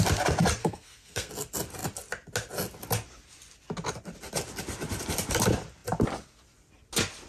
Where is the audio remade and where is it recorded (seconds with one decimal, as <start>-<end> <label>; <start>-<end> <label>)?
0.0-0.6 recorded; 0.6-1.3 remade; 1.3-7.3 recorded